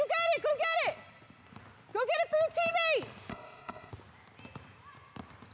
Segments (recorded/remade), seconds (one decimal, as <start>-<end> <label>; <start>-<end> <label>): 0.0-3.3 recorded; 3.3-3.9 remade; 3.9-5.5 recorded